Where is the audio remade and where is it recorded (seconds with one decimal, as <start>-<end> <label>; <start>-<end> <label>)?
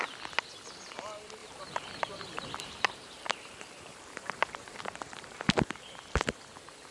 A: 0.0-1.4 recorded; 1.4-5.5 remade; 5.5-6.9 recorded